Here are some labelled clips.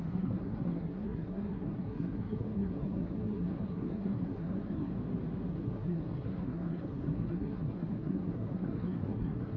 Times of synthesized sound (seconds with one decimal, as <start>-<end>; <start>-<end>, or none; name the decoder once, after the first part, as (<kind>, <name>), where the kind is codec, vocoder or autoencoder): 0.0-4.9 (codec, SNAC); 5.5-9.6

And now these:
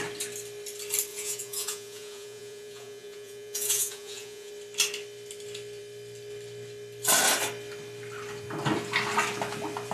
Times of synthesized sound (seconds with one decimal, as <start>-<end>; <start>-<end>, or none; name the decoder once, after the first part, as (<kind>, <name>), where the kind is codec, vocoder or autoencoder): 1.1-4.5 (vocoder, Vocos)

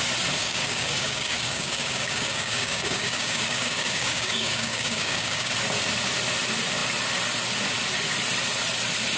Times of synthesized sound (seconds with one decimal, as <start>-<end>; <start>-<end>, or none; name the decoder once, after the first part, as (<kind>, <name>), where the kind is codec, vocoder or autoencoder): 0.4-5.5 (codec, DAC)

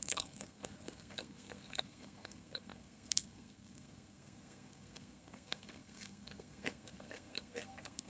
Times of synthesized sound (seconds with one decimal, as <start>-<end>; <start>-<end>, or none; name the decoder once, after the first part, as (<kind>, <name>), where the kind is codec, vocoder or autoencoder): 0.0-8.1 (codec, SNAC)

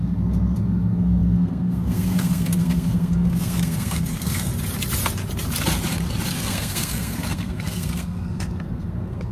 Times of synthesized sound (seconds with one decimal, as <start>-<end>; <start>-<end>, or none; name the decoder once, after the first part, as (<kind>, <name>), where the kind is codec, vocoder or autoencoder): 0.0-4.5 (codec, SNAC); 6.3-9.3